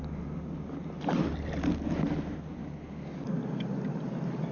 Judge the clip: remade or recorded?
recorded